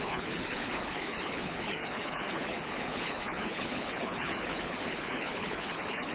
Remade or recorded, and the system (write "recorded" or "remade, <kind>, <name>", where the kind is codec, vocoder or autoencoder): remade, codec, HILCodec